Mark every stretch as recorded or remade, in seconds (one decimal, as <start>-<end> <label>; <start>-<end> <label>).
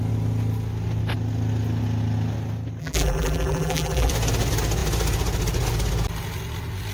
0.0-2.8 recorded; 2.8-4.1 remade; 4.1-6.9 recorded